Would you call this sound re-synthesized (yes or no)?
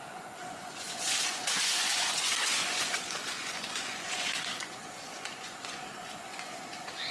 yes